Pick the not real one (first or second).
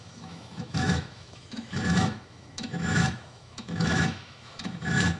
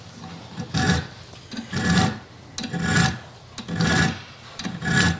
first